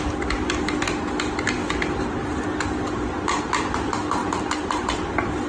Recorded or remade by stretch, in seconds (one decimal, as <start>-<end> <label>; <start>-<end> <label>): 0.0-1.6 recorded; 1.6-3.4 remade; 3.4-5.5 recorded